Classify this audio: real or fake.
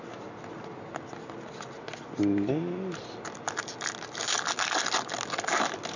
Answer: real